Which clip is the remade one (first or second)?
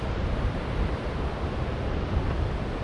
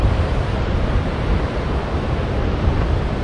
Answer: first